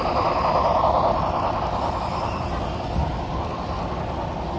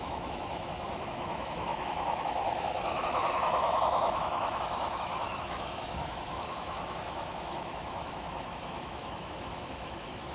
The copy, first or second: second